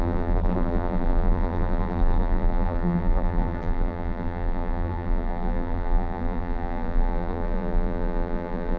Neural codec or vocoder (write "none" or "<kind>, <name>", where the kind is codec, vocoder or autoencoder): vocoder, BigVGAN v2